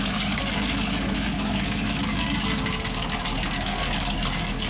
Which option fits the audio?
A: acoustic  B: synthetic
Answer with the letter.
B